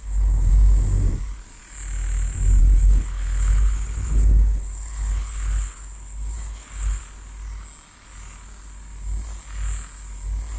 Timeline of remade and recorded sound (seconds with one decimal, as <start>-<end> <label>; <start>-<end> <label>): 0.0-0.5 remade; 0.5-2.6 recorded; 2.6-7.0 remade; 7.0-10.6 recorded